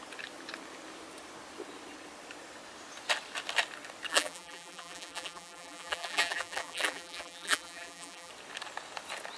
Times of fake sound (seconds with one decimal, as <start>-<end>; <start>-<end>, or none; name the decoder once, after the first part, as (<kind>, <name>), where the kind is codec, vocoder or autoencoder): 4.1-8.3 (vocoder, BigVGAN v2)